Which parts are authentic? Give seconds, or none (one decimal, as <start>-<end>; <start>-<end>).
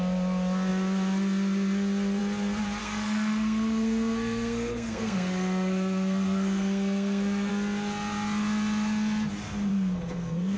0.0-2.8; 7.5-9.7